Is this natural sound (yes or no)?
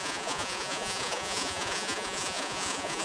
no